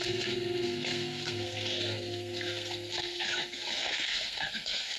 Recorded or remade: remade